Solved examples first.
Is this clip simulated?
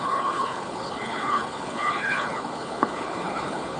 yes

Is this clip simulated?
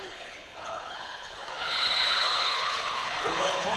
yes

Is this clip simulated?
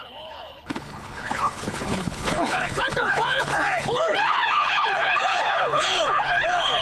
yes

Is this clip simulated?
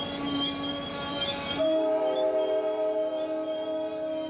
no